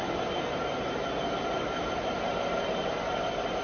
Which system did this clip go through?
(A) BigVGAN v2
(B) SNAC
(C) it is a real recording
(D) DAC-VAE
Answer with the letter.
C